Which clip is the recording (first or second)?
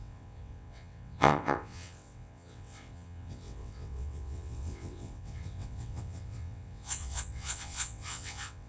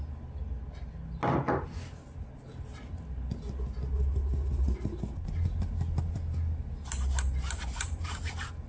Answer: second